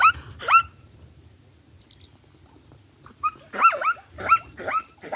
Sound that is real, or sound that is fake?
real